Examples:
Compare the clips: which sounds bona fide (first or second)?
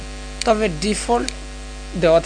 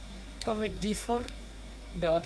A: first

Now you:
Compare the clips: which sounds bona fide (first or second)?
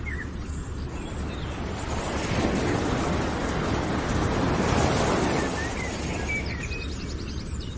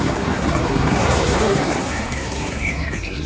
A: first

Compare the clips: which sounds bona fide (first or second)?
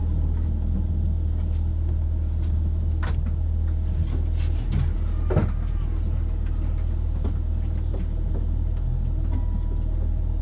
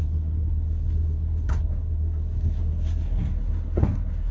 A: first